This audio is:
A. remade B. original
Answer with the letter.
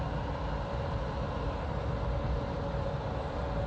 B